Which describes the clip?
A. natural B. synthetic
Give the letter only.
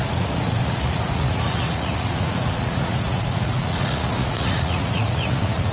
B